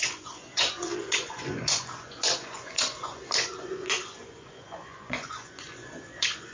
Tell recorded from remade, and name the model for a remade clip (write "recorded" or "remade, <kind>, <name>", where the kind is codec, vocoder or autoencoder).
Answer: remade, vocoder, Vocos